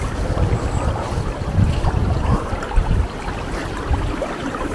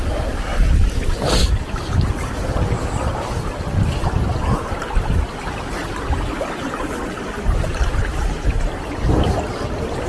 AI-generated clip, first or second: first